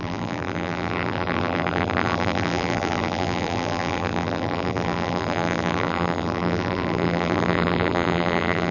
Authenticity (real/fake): fake